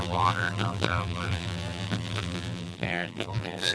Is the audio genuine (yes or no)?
no